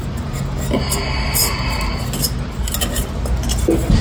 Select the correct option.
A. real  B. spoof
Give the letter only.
A